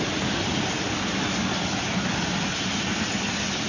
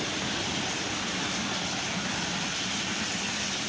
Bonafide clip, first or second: first